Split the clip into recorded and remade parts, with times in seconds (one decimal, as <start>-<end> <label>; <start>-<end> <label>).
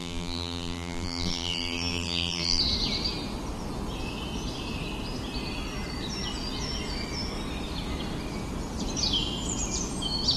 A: 0.0-2.6 remade; 2.6-10.4 recorded